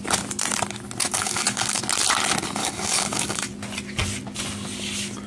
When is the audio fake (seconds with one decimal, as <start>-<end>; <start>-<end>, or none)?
1.0-1.8; 2.6-3.5